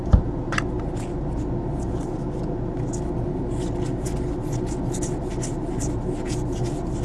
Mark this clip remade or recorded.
recorded